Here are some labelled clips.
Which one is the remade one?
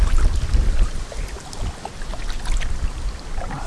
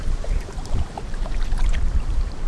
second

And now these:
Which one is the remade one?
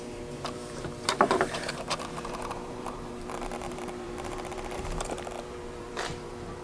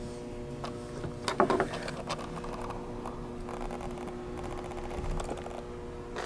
first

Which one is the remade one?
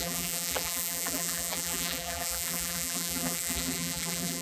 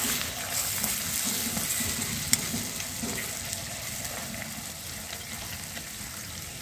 first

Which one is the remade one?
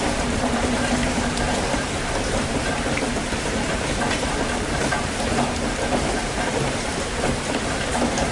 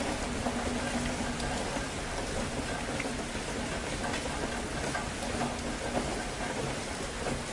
first